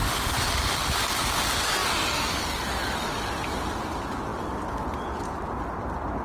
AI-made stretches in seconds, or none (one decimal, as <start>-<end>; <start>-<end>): 0.0-1.0